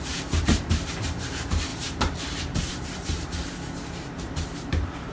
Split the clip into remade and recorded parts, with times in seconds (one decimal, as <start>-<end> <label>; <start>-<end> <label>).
0.0-5.1 remade